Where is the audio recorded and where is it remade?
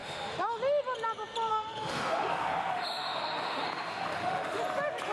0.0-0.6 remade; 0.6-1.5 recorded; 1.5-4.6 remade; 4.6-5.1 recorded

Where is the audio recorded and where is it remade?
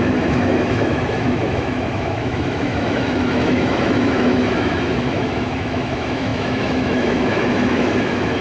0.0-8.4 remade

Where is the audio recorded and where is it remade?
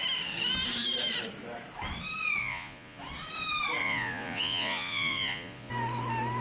0.0-2.4 recorded; 2.4-3.0 remade; 3.0-3.8 recorded; 3.8-5.7 remade; 5.7-6.4 recorded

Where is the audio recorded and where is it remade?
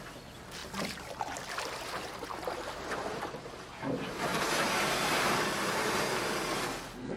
0.0-4.3 recorded; 4.3-5.9 remade; 5.9-7.2 recorded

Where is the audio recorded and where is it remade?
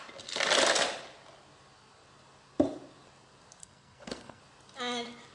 0.0-3.6 recorded; 3.6-4.4 remade; 4.4-5.3 recorded